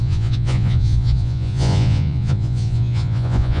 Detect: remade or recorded remade